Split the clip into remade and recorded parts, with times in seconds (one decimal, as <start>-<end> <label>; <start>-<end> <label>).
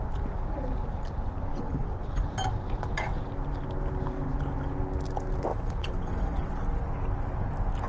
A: 0.0-1.5 recorded; 1.5-2.2 remade; 2.2-5.5 recorded; 5.5-6.5 remade; 6.5-7.9 recorded